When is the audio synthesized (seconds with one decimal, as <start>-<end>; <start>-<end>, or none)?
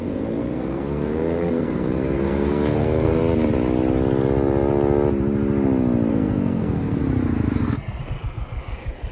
0.0-3.2; 6.1-7.0; 7.6-8.0